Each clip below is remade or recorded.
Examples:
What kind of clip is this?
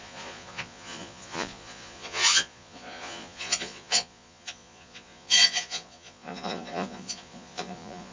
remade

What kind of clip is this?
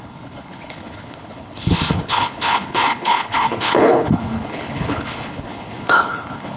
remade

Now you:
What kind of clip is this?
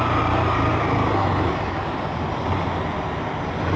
recorded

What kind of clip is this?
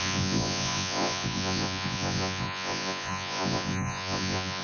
remade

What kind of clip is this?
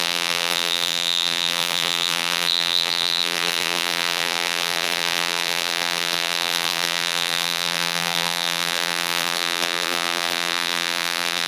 remade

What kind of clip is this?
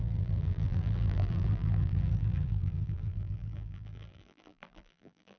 remade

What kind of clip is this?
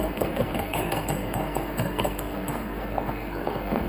remade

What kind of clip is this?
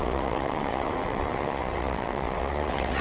remade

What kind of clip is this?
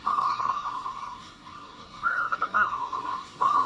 remade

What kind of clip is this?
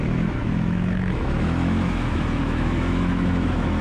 remade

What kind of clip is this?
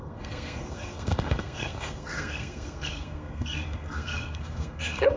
remade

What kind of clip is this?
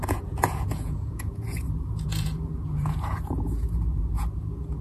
remade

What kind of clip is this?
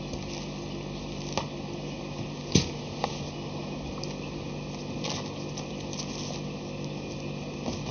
recorded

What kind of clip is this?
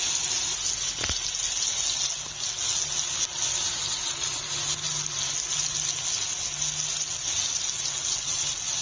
recorded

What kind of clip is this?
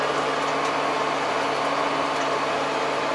recorded